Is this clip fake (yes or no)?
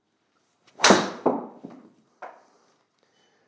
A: yes